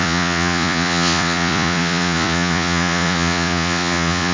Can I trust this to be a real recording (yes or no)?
no